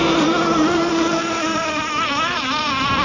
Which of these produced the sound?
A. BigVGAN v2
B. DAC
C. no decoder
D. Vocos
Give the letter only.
A